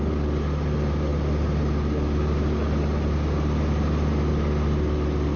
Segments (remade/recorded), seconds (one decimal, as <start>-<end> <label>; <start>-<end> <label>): 0.0-5.4 recorded